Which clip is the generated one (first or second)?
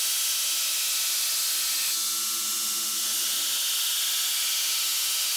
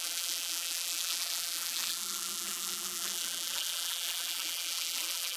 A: second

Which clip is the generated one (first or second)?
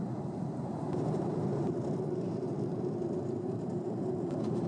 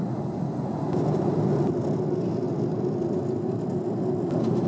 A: first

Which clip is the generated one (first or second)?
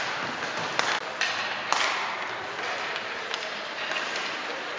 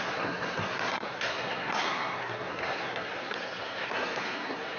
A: second